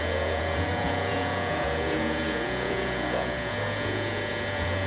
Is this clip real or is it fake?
fake